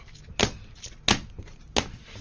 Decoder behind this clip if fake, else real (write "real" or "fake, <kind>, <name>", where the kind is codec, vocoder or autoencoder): real